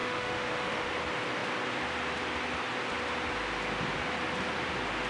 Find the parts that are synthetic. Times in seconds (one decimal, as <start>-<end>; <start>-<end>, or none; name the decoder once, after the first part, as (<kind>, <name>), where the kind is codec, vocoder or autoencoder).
0.0-0.9 (autoencoder, DAC-VAE)